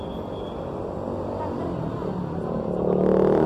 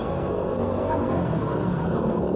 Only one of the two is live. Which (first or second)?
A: first